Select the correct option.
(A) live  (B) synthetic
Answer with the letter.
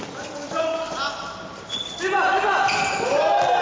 A